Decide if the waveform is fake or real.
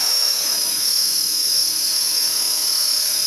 fake